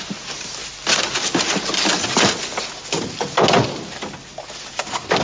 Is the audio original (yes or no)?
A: yes